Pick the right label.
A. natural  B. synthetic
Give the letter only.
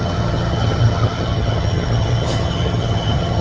B